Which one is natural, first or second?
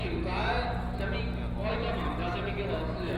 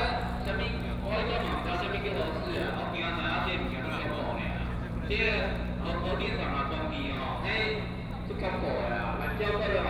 first